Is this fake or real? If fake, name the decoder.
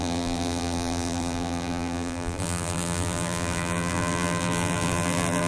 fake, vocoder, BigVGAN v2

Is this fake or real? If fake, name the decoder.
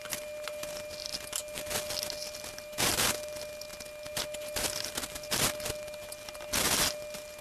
real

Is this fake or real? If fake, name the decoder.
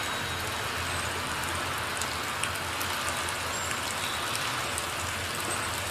real